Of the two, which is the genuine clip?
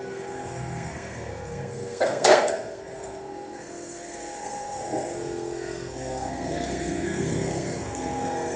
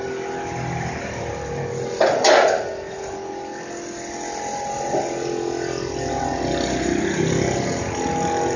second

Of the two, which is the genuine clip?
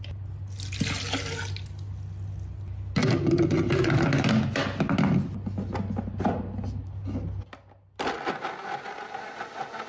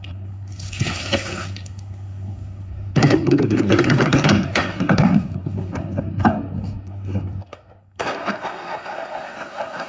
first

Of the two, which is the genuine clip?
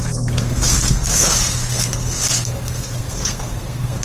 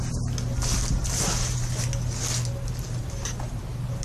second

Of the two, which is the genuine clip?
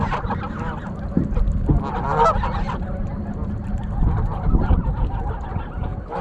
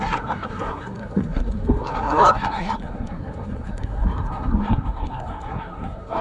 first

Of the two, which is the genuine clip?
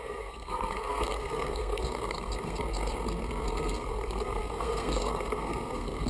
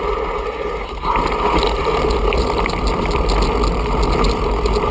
second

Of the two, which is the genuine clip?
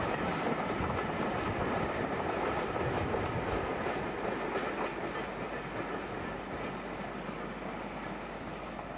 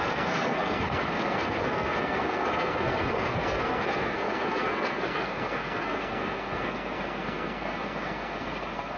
first